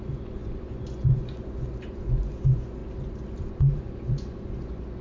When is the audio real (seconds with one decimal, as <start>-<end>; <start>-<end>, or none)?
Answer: 2.8-3.5